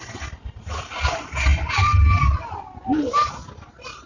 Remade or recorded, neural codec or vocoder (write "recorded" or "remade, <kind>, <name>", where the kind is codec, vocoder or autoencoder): recorded